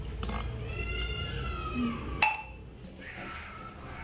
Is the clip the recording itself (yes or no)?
yes